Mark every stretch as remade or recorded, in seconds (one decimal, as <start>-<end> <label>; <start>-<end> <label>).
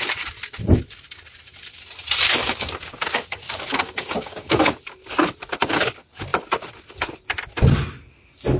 0.0-2.4 recorded; 2.4-4.6 remade; 4.6-8.6 recorded